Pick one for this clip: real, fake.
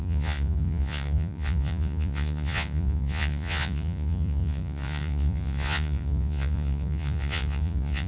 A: fake